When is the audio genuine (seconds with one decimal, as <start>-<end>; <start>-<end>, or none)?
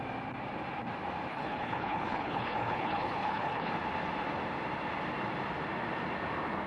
0.0-1.3; 3.7-6.7